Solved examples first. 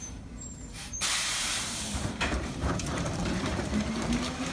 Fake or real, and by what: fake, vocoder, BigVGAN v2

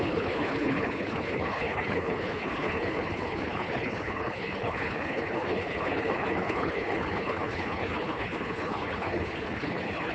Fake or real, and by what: fake, codec, HILCodec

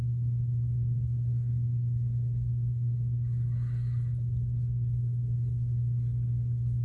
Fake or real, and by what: fake, codec, HILCodec